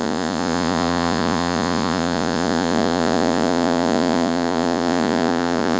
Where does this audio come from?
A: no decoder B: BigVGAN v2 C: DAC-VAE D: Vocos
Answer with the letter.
D